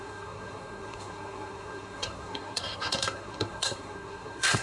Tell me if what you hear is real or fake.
fake